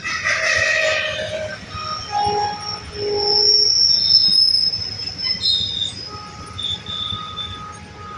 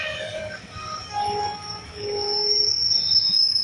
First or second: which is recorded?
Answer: first